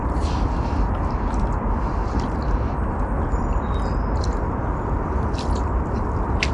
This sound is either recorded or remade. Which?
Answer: recorded